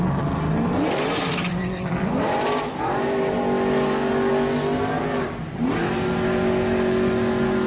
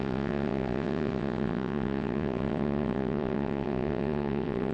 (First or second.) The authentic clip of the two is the first